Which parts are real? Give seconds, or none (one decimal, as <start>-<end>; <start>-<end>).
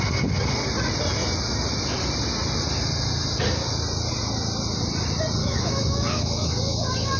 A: 0.0-5.4